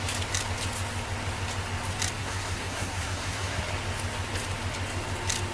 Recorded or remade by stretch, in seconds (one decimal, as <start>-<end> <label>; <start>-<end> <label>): 0.0-2.2 recorded; 2.2-3.6 remade; 3.6-5.5 recorded

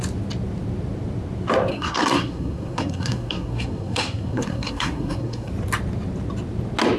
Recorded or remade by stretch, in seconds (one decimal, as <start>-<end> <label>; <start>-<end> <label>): 0.0-1.7 recorded; 1.7-5.5 remade; 5.5-7.0 recorded

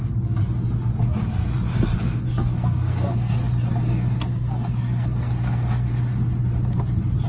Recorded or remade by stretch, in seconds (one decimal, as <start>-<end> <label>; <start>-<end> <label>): 0.0-1.7 recorded; 1.7-3.3 remade; 3.3-3.9 recorded; 3.9-6.0 remade; 6.0-7.3 recorded

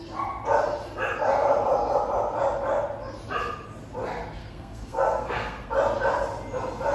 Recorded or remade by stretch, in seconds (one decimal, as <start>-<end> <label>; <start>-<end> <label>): 0.0-4.4 recorded; 4.4-5.7 remade; 5.7-6.9 recorded